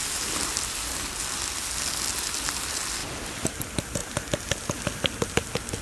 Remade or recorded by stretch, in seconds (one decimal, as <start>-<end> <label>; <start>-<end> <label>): 0.0-3.0 recorded; 3.0-3.6 remade; 3.6-5.8 recorded